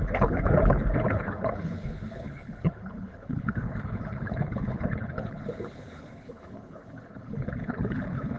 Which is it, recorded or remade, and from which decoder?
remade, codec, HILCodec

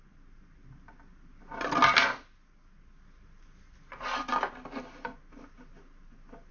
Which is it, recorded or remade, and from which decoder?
recorded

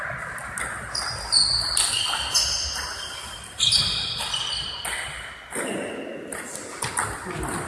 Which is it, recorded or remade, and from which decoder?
recorded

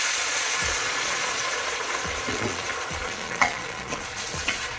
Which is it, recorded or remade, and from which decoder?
remade, vocoder, Vocos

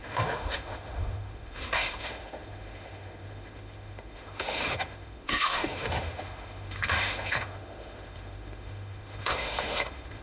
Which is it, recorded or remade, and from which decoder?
remade, autoencoder, DAC-VAE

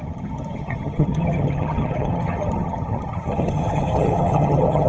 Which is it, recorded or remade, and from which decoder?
remade, vocoder, HiFi-GAN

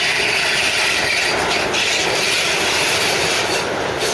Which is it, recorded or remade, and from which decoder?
recorded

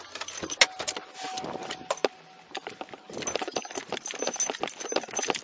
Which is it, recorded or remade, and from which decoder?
recorded